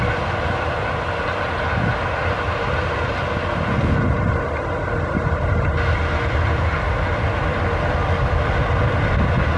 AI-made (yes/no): no